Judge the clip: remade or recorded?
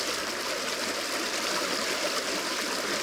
recorded